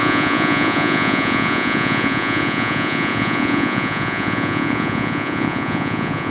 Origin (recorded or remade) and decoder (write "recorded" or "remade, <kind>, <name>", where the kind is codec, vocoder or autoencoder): remade, vocoder, Vocos